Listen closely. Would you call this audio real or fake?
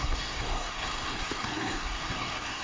fake